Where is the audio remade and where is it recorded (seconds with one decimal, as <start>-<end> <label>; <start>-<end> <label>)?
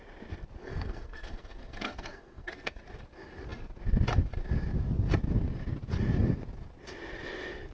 0.0-0.6 recorded; 0.6-2.8 remade; 2.8-7.7 recorded